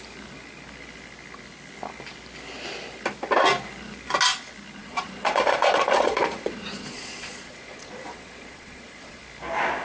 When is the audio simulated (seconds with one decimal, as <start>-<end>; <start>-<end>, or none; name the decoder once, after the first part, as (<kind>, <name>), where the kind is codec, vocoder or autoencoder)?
4.8-9.2 (vocoder, Vocos)